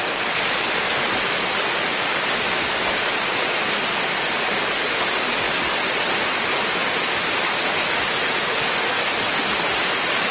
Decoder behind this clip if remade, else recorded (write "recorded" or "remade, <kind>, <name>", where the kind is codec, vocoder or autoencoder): recorded